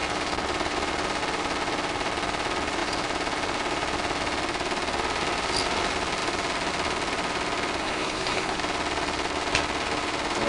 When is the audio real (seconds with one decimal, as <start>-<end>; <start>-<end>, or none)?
0.0-7.8; 8.6-10.5